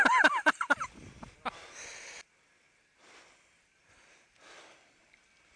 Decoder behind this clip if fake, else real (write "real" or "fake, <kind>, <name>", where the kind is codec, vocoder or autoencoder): real